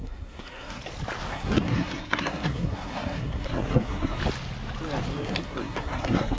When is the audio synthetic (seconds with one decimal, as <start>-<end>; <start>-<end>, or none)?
0.0-0.8; 1.3-4.2; 5.1-6.4